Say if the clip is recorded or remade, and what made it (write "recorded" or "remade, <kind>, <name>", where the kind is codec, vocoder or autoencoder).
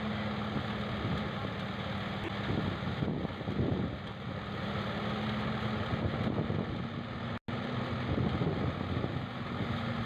recorded